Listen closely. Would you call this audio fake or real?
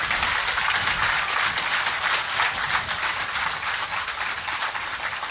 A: fake